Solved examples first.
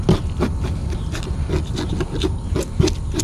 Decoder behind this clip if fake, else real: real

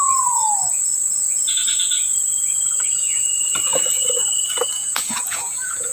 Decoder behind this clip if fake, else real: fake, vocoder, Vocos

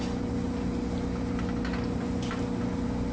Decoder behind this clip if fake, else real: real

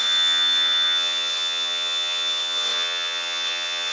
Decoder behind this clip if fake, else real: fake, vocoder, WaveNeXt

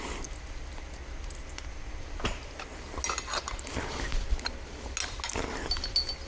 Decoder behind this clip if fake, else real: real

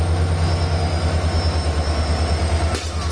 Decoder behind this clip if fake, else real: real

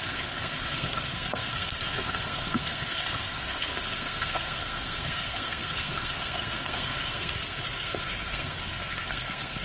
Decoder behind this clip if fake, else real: fake, codec, SNAC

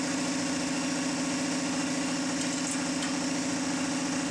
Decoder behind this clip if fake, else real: real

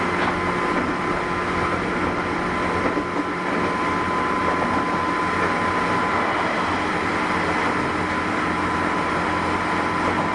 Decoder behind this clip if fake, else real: real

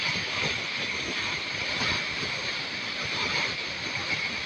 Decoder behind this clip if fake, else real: real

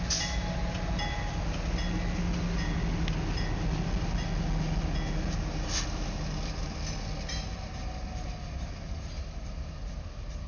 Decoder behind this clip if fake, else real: real